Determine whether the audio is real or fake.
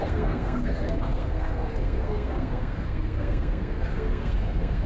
fake